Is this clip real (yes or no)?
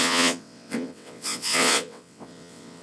no